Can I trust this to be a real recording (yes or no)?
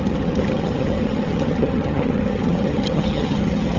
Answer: no